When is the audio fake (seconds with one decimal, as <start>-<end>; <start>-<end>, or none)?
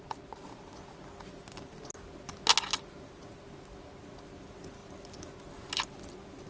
none